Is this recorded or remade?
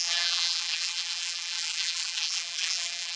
remade